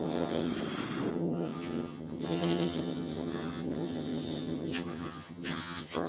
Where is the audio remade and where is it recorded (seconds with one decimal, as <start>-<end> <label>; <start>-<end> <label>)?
0.0-0.5 remade; 0.5-1.1 recorded; 1.1-6.1 remade